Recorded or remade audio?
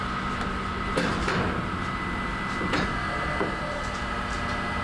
recorded